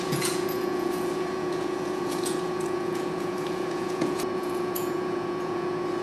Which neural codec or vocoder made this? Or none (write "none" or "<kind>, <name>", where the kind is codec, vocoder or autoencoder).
vocoder, Vocos